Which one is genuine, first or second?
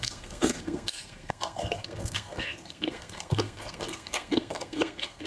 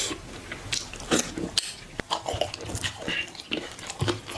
second